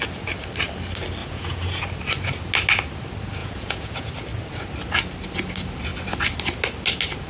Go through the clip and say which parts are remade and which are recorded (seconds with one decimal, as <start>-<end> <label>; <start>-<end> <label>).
0.0-1.2 recorded; 1.2-1.8 remade; 1.8-3.4 recorded; 3.4-4.1 remade; 4.1-7.3 recorded